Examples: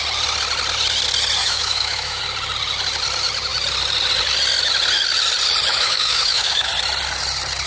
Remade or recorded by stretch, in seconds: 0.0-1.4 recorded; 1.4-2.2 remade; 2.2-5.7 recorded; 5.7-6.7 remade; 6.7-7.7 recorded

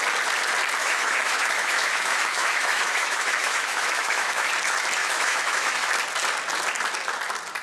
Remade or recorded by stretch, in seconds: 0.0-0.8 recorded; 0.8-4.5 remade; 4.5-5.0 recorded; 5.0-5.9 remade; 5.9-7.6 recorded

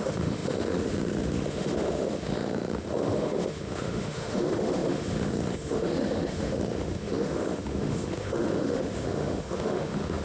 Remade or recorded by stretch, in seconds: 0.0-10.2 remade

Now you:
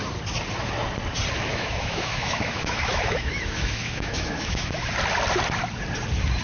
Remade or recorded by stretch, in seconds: 0.0-1.5 recorded; 1.5-4.9 remade; 4.9-6.4 recorded